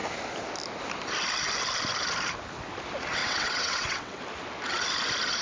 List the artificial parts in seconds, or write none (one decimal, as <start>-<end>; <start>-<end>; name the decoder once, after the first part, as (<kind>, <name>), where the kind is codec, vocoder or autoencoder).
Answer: 3.2-4.2 (vocoder, WaveNeXt)